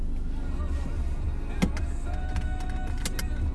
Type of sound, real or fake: real